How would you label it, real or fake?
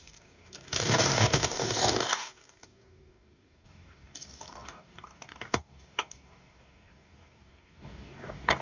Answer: fake